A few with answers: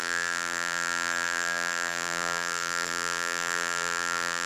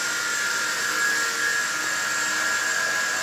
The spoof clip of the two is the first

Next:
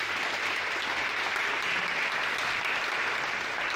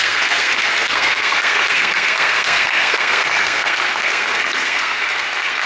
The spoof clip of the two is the second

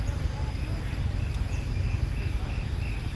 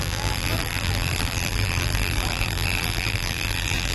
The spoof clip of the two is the second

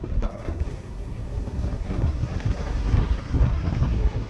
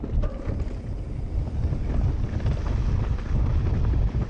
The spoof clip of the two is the first